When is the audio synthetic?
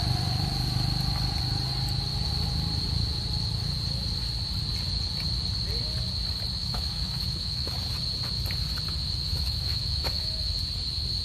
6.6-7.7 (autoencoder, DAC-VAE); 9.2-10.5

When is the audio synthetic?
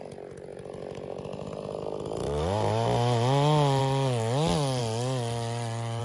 4.8-6.0 (vocoder, BigVGAN v2)